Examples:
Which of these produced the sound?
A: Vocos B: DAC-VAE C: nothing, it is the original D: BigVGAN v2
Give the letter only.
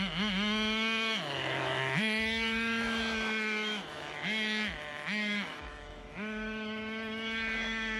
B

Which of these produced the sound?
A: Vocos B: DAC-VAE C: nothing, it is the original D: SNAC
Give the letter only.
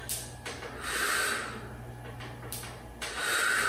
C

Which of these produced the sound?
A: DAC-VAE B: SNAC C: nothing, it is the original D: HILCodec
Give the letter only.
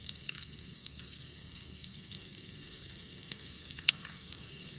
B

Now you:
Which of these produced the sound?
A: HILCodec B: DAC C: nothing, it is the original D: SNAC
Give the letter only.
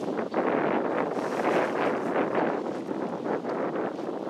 C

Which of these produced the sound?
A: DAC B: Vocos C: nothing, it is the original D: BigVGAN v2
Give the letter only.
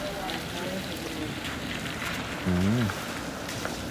C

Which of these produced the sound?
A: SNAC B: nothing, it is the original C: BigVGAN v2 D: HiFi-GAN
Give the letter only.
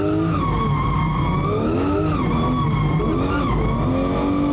B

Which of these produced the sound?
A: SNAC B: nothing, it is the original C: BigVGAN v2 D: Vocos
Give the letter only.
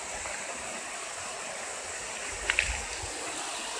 B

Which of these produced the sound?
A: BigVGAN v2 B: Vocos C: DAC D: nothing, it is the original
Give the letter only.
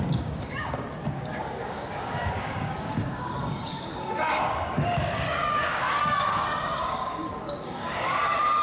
C